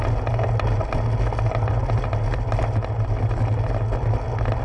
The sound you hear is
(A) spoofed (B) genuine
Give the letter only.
B